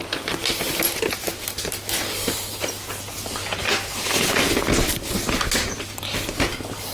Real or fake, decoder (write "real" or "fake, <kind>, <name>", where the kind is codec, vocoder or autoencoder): real